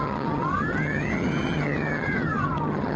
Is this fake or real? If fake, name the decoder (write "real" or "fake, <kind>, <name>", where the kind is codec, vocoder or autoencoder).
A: fake, vocoder, HiFi-GAN